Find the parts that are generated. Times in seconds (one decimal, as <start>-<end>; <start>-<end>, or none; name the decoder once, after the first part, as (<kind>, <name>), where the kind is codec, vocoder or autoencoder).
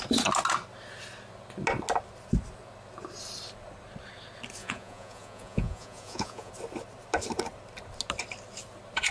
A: 4.6-6.5 (vocoder, Vocos)